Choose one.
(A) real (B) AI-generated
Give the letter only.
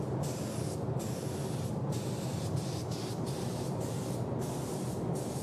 A